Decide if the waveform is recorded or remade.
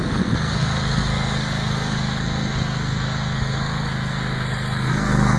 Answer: remade